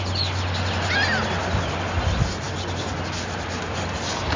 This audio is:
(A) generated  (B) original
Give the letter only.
B